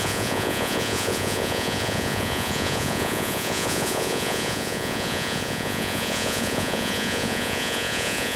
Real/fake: fake